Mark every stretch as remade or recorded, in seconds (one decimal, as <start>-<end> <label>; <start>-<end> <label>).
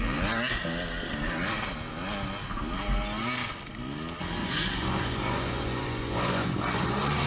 0.0-4.4 recorded; 4.4-7.3 remade